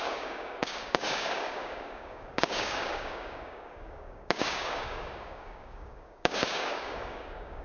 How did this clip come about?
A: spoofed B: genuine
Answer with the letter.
A